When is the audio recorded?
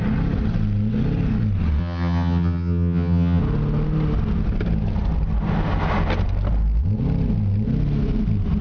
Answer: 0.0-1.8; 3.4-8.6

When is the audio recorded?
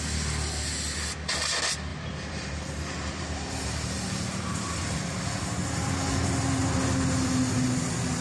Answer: 0.0-1.9; 5.0-8.2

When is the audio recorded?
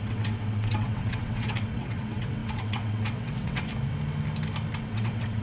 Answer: 3.7-4.8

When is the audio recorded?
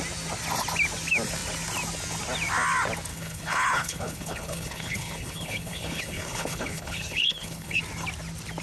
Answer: 0.0-3.1; 7.8-8.6